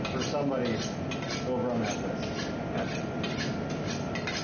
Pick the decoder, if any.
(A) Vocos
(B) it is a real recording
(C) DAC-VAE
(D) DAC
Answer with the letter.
B